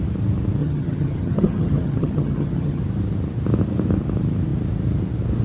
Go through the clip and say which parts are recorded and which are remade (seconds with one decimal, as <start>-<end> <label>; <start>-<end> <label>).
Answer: 0.0-0.6 recorded; 0.6-2.8 remade; 2.8-5.4 recorded